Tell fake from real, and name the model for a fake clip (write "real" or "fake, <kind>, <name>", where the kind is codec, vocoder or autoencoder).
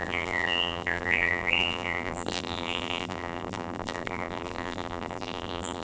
fake, vocoder, BigVGAN v2